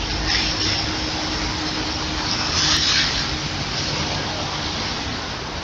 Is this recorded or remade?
recorded